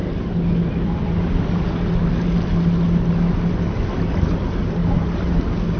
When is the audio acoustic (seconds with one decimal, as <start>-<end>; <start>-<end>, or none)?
0.0-5.8